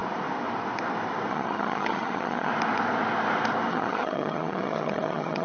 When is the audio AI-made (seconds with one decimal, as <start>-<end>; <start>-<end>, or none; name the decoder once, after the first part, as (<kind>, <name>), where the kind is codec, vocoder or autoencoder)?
1.3-2.5 (vocoder, HiFi-GAN); 3.7-5.4